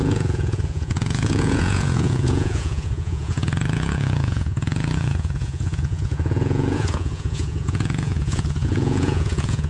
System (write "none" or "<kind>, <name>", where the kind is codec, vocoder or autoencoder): vocoder, Vocos